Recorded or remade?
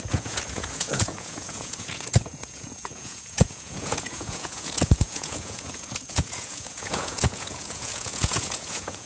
remade